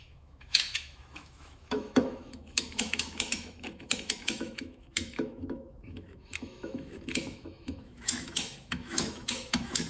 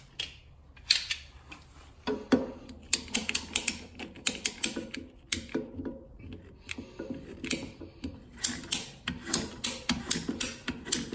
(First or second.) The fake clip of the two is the first